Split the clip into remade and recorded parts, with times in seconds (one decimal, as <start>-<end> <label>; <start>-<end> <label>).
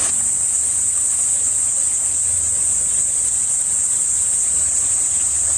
0.0-5.6 recorded